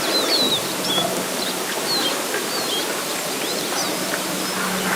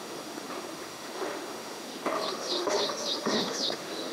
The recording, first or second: first